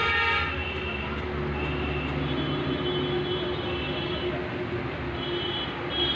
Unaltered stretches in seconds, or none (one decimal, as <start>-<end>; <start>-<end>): 0.0-6.2